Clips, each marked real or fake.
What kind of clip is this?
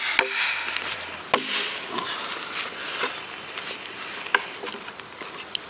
real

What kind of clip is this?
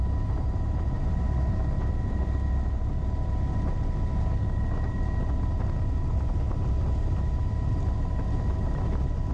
real